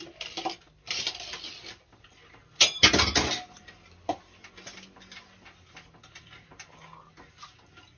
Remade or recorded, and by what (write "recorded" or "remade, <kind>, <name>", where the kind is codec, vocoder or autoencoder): recorded